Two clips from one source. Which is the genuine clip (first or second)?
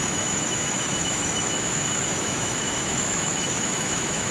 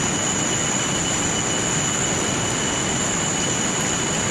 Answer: second